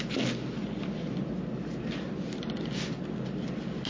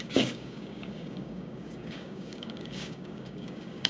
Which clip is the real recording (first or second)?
first